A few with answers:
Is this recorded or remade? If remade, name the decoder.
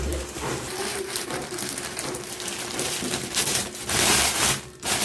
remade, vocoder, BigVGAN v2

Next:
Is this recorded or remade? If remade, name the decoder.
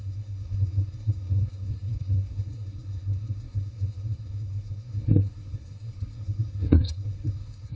remade, codec, SNAC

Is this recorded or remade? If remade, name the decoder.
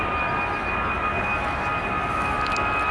recorded